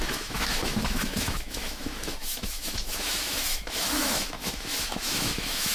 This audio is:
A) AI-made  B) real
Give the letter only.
A